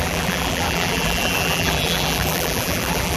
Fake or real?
fake